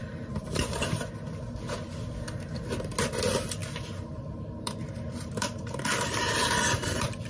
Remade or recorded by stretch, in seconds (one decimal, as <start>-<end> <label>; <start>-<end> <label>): 0.0-1.0 remade; 1.0-3.6 recorded; 3.6-7.3 remade